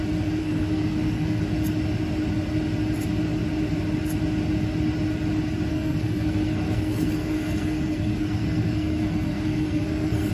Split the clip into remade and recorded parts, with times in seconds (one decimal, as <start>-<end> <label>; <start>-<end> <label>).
0.0-0.4 recorded; 0.4-1.4 remade; 1.4-5.7 recorded; 5.7-10.3 remade